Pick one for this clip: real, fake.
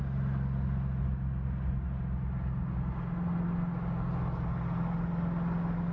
real